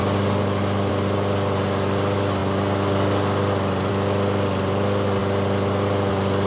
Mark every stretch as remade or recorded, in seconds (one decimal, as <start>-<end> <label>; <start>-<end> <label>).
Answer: 0.0-6.5 recorded